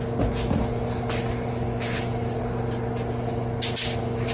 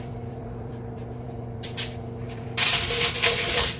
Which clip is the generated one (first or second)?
second